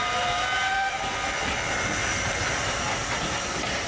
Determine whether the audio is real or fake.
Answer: real